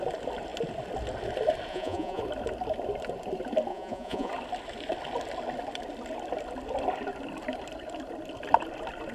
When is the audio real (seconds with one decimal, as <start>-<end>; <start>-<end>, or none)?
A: 0.0-1.7; 2.2-3.7; 4.3-9.1